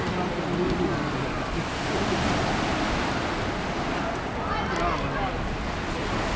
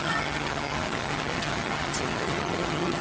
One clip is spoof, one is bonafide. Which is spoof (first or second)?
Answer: second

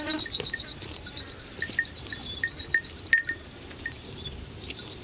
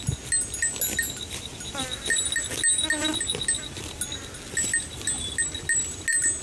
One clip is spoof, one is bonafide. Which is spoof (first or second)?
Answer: first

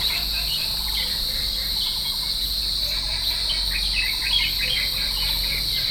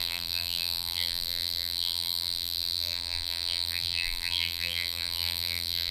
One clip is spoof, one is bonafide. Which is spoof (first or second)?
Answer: second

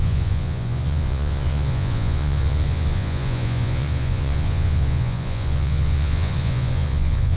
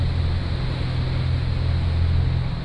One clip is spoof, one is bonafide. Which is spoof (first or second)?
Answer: first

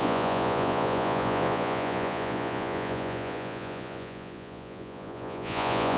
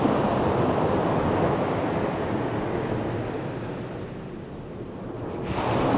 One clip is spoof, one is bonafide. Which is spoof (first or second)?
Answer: first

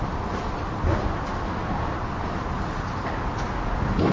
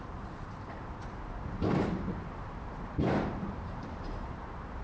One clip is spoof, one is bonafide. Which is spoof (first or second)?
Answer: second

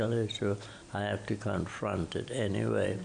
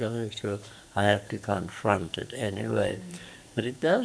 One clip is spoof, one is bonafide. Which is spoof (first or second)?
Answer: second